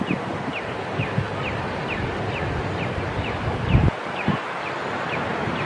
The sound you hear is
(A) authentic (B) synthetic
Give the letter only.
A